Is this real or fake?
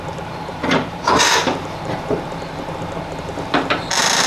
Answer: fake